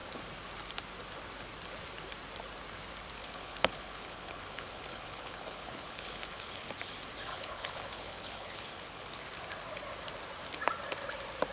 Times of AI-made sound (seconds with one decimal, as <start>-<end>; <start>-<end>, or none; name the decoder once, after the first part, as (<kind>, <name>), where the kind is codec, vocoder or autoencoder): 3.2-6.7 (codec, HILCodec); 7.3-9.2